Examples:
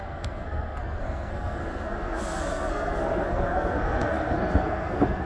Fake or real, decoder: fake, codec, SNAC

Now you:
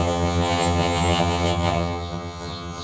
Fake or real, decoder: fake, vocoder, HiFi-GAN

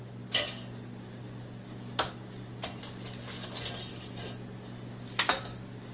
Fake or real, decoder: real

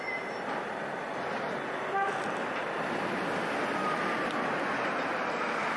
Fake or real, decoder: real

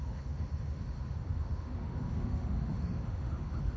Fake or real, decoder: fake, autoencoder, DAC-VAE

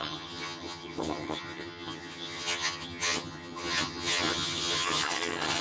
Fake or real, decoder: fake, vocoder, HiFi-GAN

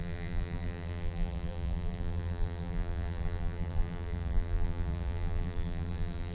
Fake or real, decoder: fake, vocoder, BigVGAN v2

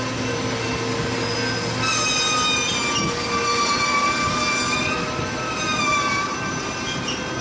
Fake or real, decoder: real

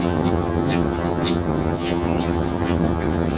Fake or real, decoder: fake, vocoder, HiFi-GAN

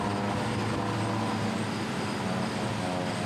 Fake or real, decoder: real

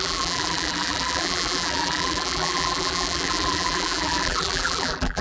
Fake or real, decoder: fake, vocoder, BigVGAN v2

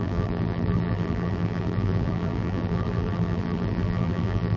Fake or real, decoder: fake, vocoder, BigVGAN v2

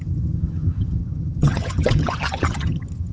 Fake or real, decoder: fake, vocoder, HiFi-GAN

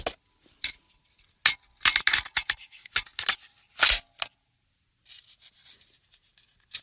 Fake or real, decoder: real